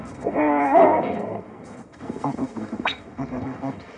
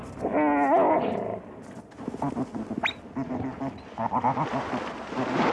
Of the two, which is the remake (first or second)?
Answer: first